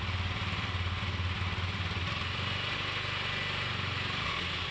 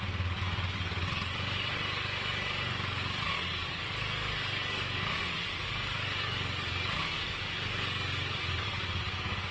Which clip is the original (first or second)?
first